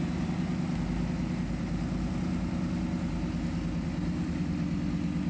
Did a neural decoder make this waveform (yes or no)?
no